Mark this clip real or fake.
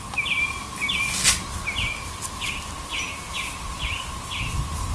real